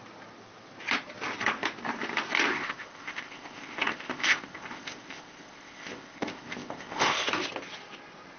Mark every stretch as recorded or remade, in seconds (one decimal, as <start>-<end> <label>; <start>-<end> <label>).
0.0-2.5 recorded; 2.5-7.3 remade; 7.3-8.4 recorded